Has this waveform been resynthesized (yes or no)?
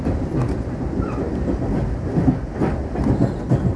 no